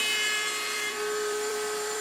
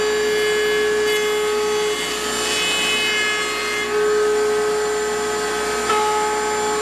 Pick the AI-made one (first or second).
first